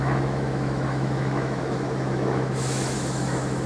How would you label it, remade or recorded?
remade